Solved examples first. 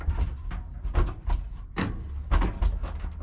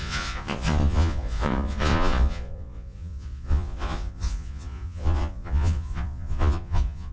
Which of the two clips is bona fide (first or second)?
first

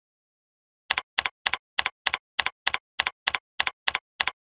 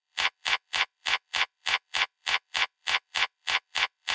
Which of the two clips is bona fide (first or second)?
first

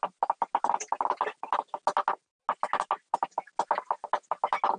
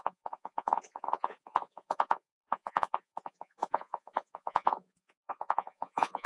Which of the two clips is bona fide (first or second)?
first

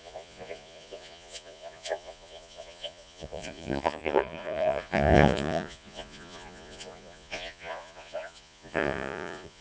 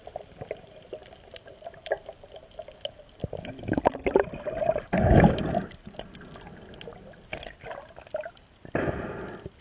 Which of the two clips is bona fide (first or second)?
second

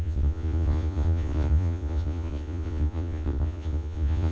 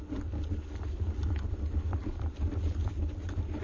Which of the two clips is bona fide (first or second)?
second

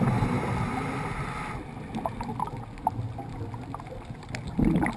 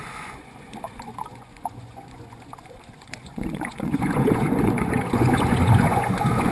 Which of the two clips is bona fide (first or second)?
first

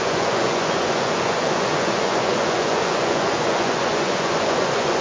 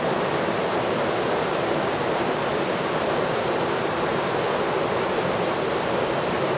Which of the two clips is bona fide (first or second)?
second